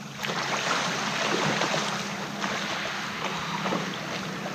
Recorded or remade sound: recorded